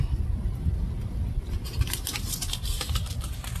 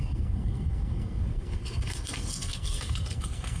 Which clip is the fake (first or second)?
second